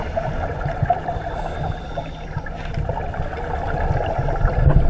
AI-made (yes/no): no